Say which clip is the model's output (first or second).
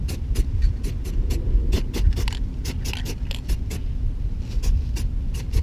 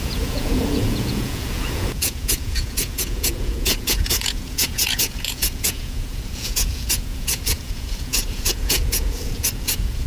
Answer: second